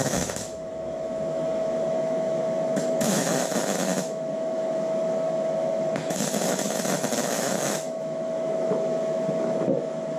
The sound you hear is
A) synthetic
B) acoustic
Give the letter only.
A